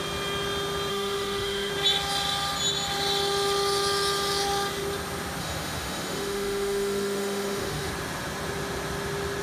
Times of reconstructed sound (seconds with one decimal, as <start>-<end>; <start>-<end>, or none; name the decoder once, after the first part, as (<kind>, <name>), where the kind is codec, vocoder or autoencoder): 0.9-1.7 (autoencoder, DAC-VAE); 5.4-7.9